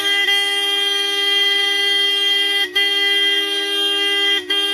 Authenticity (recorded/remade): remade